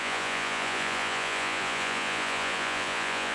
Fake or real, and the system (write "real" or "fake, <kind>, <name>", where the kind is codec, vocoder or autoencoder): fake, vocoder, Vocos